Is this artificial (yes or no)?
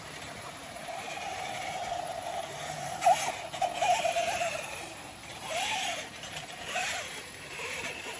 yes